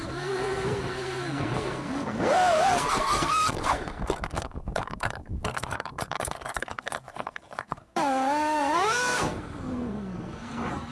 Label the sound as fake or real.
fake